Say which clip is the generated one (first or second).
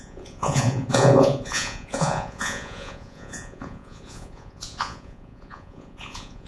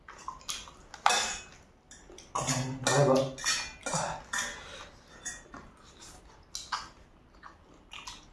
first